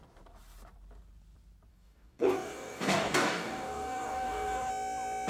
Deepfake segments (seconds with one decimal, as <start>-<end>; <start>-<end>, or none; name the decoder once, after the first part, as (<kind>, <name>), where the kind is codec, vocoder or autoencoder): 1.7-4.7 (codec, DAC)